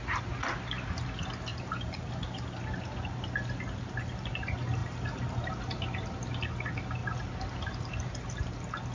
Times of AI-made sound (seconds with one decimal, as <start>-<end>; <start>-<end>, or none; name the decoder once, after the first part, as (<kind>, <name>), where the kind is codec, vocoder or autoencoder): 1.5-2.6 (vocoder, BigVGAN v2); 4.8-5.5